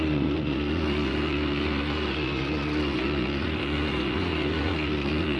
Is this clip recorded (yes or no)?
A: no